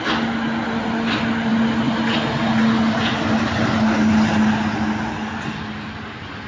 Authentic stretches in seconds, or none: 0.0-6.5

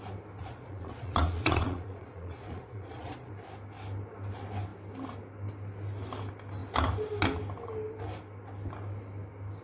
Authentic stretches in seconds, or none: 0.0-0.4; 3.3-9.6

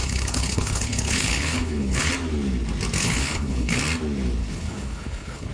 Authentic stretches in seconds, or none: 2.1-3.0; 3.8-4.4

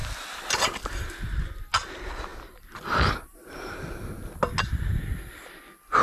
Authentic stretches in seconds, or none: 0.0-6.0

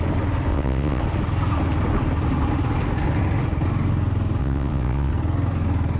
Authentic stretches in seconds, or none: 0.0-0.5; 1.0-4.4; 5.1-6.0

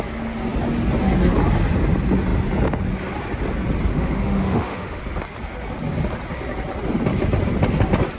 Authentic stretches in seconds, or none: 0.0-3.9; 5.0-8.2

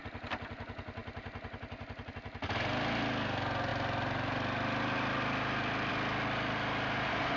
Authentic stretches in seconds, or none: 0.0-7.4